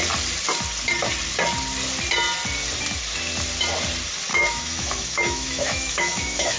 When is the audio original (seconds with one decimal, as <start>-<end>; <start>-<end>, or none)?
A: 0.0-4.3